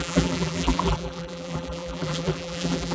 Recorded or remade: remade